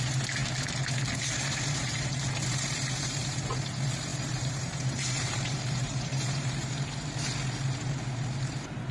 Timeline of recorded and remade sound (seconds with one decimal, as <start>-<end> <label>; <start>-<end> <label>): 0.0-4.1 recorded; 4.1-6.7 remade; 6.7-8.9 recorded